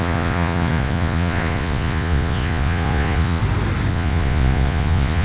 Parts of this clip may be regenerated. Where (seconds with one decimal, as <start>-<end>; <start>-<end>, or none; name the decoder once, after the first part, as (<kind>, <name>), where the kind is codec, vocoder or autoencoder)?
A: 0.0-3.4 (vocoder, Vocos); 3.9-5.2